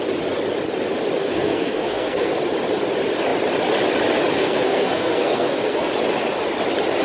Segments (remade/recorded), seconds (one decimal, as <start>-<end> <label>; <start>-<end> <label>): 0.0-1.2 recorded; 1.2-2.3 remade; 2.3-4.4 recorded; 4.4-5.9 remade; 5.9-7.0 recorded